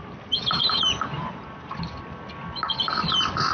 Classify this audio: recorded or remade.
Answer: recorded